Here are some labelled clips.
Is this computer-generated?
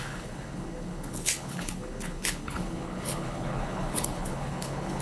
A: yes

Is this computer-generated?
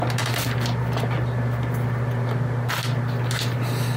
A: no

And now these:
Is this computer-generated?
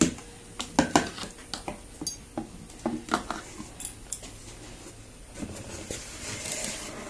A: no